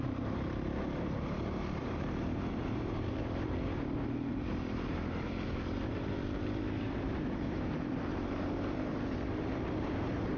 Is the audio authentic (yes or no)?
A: no